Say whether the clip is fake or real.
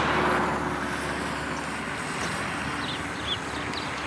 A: real